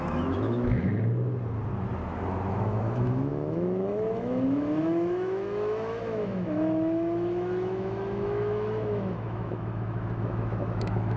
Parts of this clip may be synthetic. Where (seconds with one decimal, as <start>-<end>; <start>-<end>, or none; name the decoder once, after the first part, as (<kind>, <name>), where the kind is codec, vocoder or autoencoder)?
0.0-0.9 (autoencoder, DAC-VAE); 2.5-11.2